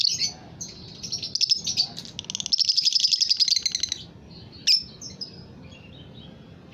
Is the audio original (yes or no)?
yes